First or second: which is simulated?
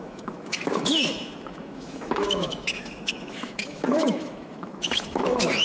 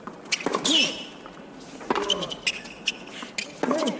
first